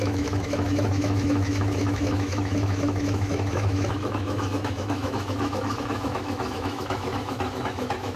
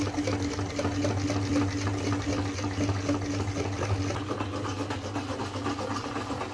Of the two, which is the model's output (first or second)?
first